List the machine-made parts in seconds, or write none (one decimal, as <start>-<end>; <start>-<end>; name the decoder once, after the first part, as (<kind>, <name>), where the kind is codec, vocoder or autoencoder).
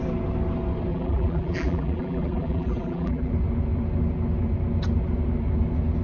0.9-3.3 (vocoder, BigVGAN v2)